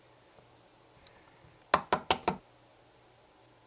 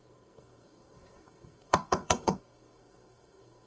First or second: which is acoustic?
first